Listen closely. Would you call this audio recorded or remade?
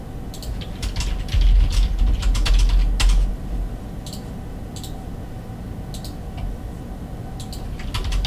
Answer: recorded